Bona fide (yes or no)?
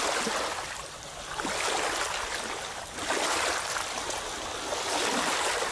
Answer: yes